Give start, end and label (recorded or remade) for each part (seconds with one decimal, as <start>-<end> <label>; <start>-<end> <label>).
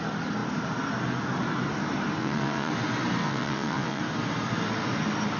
0.0-2.2 recorded; 2.2-2.7 remade; 2.7-3.2 recorded; 3.2-4.0 remade; 4.0-5.4 recorded